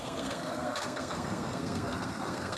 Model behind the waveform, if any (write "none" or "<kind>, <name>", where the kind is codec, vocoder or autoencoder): codec, SNAC